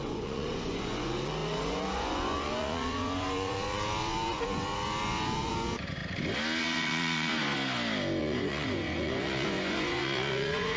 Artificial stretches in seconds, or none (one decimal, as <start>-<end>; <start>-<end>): 0.0-6.0; 6.6-7.3; 8.2-10.8

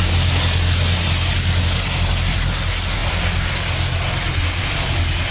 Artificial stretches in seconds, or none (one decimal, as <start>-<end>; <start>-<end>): none

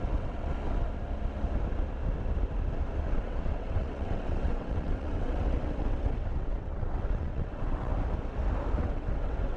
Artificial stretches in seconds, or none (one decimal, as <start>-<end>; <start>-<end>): 0.0-0.5; 3.0-7.9; 8.8-9.6